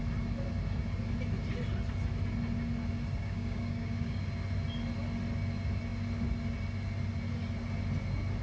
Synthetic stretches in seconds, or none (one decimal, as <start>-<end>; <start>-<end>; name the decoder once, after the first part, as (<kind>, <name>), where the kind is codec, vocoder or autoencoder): 3.2-4.2 (codec, DAC)